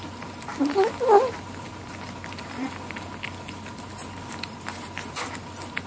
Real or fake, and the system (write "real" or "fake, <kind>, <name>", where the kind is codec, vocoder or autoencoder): real